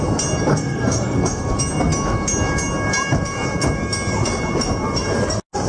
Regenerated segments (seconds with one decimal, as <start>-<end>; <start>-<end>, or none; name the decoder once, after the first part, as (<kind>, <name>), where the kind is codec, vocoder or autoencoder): 0.5-1.6 (codec, SNAC)